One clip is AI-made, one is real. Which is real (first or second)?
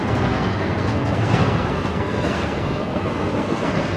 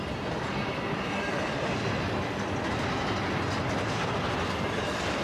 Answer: second